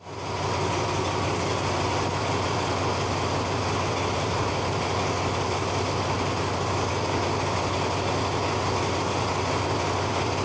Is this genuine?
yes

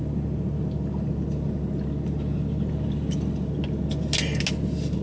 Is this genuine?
yes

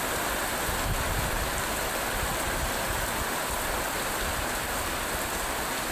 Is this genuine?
yes